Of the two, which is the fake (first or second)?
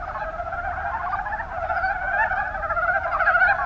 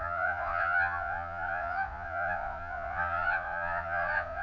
second